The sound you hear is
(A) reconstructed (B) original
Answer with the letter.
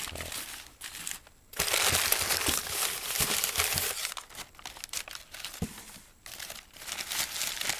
B